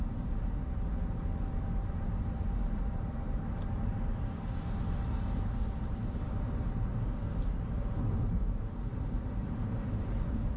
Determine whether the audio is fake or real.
fake